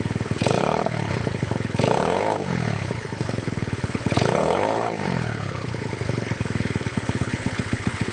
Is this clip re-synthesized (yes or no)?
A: yes